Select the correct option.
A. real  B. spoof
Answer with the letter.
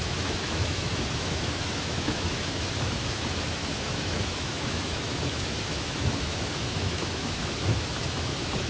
B